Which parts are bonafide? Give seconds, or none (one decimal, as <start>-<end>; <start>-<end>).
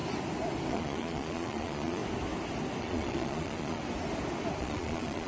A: 0.0-0.7; 2.0-2.8; 3.8-4.6